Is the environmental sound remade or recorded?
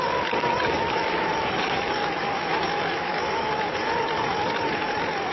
remade